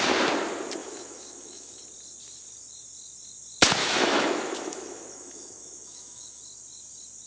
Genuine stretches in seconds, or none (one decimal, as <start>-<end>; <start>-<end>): 0.0-0.8; 1.8-3.8; 6.4-7.3